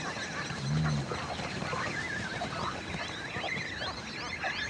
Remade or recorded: recorded